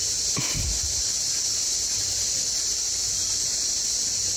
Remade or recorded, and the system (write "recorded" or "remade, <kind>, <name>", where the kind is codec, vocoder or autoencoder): recorded